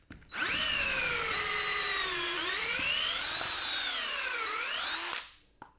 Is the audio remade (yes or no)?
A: no